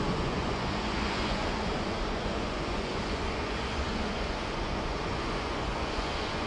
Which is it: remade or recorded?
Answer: remade